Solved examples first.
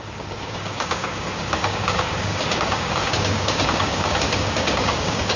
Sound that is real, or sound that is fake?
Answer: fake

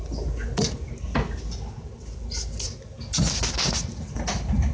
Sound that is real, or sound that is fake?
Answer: real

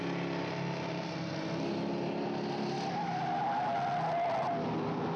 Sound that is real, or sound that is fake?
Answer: real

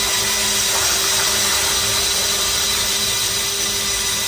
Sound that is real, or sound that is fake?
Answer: real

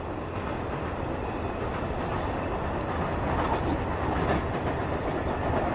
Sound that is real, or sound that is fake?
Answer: real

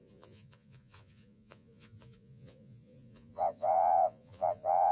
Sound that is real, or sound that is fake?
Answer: fake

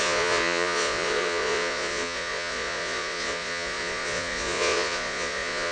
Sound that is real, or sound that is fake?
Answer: fake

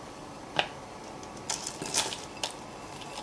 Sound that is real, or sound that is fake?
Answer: real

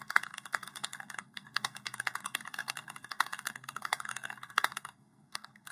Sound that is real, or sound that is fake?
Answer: fake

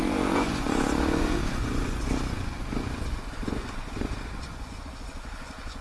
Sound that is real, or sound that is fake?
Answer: fake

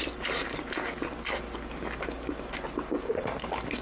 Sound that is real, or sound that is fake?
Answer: real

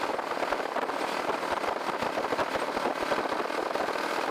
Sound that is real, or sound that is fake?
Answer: real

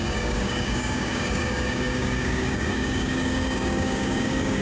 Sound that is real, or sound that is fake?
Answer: fake